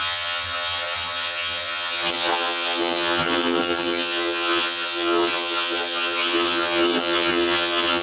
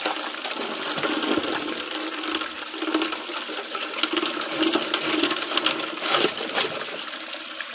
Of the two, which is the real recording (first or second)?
second